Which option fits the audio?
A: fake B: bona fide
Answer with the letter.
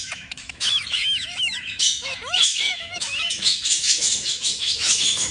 A